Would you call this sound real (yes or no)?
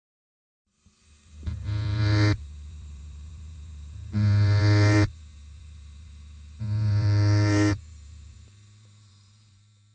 no